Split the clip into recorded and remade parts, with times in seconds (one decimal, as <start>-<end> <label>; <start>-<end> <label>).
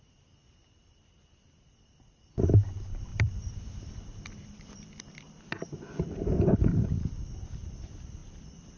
0.0-0.8 recorded; 0.8-2.4 remade; 2.4-3.1 recorded; 3.1-4.9 remade; 4.9-8.8 recorded